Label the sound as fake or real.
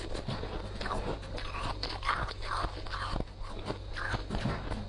real